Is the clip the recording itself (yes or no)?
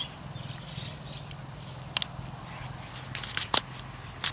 yes